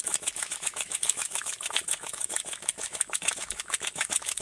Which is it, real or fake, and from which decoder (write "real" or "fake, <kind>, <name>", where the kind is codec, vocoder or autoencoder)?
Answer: fake, autoencoder, DAC-VAE